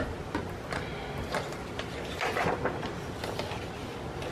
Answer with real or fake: real